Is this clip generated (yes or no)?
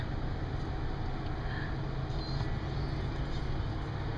no